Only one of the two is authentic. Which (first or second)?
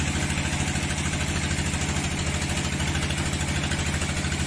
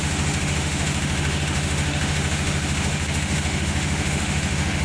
first